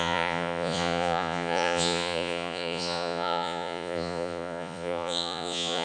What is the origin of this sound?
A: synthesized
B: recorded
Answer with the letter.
A